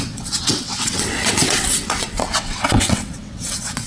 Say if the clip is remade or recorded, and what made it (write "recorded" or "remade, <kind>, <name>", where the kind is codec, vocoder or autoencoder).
remade, vocoder, WaveNeXt